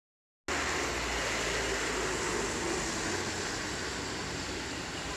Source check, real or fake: real